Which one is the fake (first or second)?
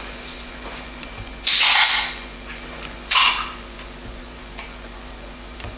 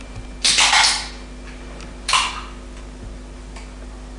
first